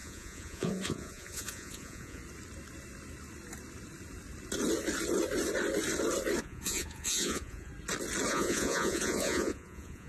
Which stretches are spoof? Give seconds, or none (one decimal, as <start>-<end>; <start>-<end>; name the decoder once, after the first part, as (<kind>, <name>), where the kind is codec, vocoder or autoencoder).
0.0-2.2 (vocoder, Vocos); 6.4-7.7; 8.3-10.1